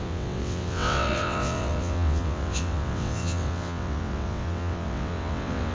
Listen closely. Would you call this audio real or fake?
fake